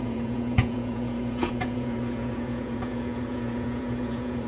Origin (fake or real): fake